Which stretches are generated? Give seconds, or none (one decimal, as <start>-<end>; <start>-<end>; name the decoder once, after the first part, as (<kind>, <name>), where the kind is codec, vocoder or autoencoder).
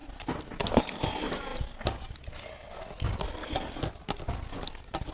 none